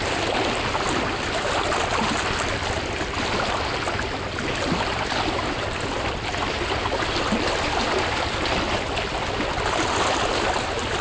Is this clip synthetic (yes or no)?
no